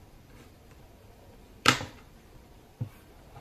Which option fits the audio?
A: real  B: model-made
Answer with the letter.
B